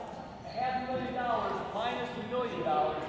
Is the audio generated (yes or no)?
no